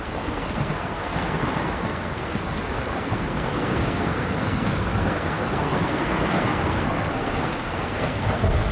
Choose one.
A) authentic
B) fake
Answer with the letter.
B